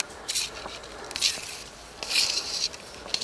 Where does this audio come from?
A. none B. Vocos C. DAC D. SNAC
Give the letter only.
A